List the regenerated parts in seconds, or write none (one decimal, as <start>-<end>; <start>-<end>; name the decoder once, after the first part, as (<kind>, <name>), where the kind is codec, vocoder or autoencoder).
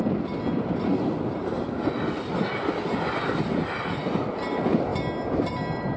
none